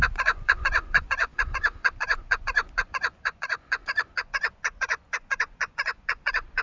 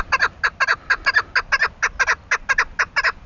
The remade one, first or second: first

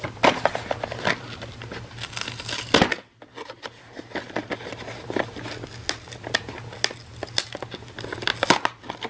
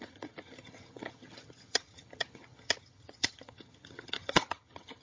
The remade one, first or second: second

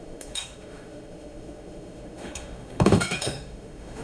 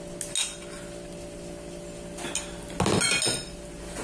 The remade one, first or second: first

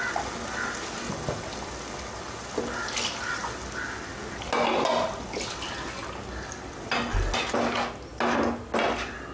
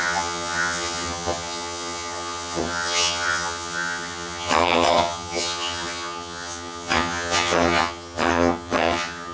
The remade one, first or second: second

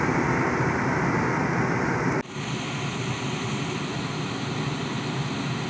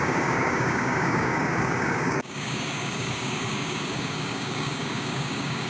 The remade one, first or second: second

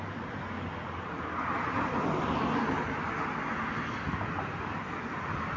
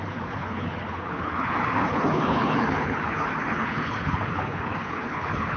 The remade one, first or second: second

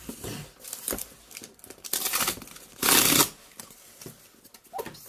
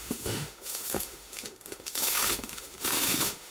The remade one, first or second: second